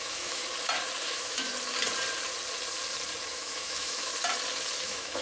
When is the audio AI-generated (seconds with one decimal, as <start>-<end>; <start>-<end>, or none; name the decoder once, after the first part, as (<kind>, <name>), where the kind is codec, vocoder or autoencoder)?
0.0-0.4 (autoencoder, DAC-VAE); 1.0-1.5; 3.3-4.1; 4.8-5.2